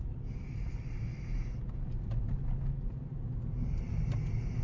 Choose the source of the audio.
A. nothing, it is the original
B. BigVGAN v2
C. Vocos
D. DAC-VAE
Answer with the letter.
A